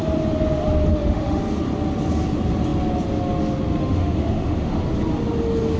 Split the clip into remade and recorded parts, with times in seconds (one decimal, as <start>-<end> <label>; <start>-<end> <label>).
0.0-0.9 recorded; 0.9-1.4 remade; 1.4-3.8 recorded; 3.8-4.8 remade; 4.8-5.8 recorded